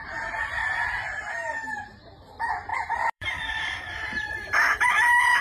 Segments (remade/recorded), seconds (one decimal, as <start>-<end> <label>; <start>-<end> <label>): 0.0-0.6 recorded; 0.6-1.3 remade; 1.3-2.7 recorded; 2.7-4.9 remade; 4.9-5.4 recorded